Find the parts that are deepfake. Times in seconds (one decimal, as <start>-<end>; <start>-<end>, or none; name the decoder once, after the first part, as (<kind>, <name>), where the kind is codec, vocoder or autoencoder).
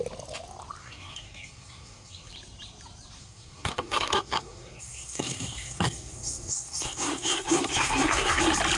0.8-2.3 (codec, SNAC); 3.2-8.4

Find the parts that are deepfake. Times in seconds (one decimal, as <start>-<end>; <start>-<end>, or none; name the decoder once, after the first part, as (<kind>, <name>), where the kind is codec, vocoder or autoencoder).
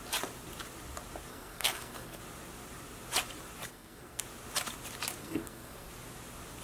1.3-2.2 (codec, SNAC); 3.7-4.2; 5.2-5.9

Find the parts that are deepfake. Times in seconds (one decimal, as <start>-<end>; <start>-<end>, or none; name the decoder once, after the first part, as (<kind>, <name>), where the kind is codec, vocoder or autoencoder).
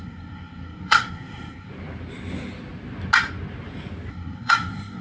0.0-1.7 (codec, SNAC); 4.1-5.0